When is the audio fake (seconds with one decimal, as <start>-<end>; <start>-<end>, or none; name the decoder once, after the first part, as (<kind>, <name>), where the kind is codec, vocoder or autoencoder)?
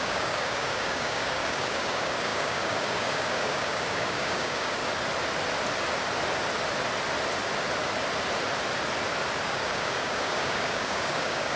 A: 0.0-4.8 (codec, DAC); 9.4-11.6